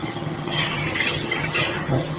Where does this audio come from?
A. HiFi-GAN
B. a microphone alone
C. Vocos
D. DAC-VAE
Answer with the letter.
A